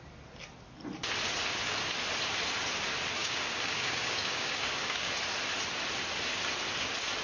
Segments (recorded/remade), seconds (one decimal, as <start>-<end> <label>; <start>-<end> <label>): 0.0-3.2 recorded; 3.2-5.1 remade; 5.1-7.2 recorded